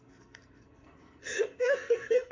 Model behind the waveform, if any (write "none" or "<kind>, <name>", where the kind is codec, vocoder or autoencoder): codec, SNAC